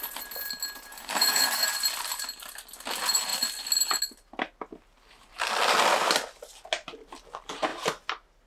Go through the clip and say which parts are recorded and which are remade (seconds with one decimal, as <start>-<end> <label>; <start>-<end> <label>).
0.0-0.9 recorded; 0.9-1.7 remade; 1.7-8.5 recorded